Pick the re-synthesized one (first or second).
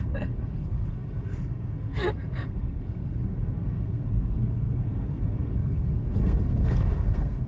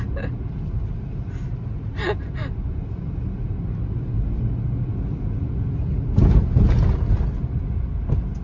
first